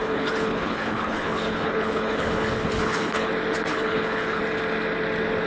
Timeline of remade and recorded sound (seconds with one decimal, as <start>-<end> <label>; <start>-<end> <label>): 0.0-3.3 remade; 3.3-3.7 recorded; 3.7-4.4 remade; 4.4-5.5 recorded